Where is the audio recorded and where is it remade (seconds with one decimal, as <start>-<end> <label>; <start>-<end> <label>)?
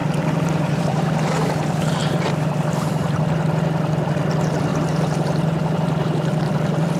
0.0-0.8 remade; 0.8-2.0 recorded; 2.0-3.2 remade; 3.2-4.7 recorded; 4.7-7.0 remade